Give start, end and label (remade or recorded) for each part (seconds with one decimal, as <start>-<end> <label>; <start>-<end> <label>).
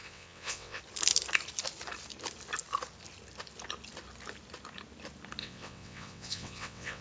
0.0-0.8 remade; 0.8-5.4 recorded; 5.4-7.0 remade